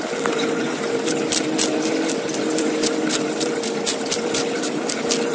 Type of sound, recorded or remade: remade